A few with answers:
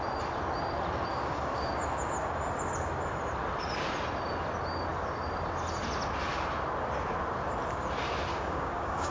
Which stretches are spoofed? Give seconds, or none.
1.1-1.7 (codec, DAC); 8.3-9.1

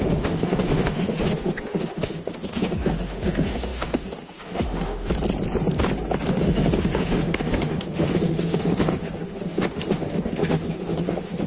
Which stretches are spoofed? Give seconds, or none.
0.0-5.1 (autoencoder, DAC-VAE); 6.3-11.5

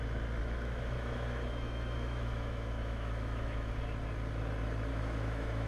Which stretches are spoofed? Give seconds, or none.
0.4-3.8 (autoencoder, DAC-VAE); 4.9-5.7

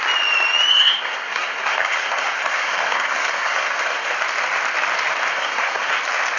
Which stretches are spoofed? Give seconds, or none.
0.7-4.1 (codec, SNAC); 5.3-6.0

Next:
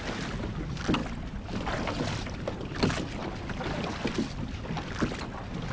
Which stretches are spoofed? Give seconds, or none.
none